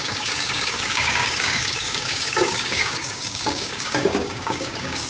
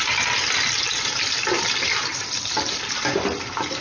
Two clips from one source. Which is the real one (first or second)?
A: second